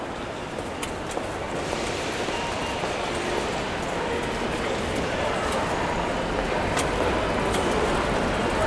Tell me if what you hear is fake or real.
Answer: fake